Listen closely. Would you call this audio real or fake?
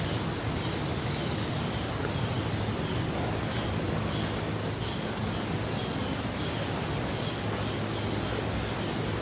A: real